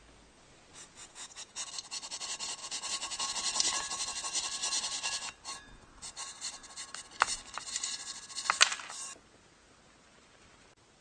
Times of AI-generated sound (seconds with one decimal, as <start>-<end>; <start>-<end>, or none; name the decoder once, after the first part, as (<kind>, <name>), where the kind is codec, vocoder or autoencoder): 1.0-1.7 (vocoder, Vocos); 2.6-3.3